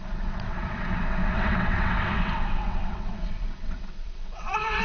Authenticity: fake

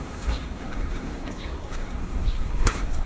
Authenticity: fake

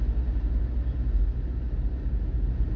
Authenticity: real